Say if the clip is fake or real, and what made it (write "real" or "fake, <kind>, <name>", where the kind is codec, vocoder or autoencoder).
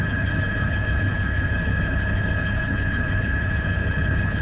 fake, codec, HILCodec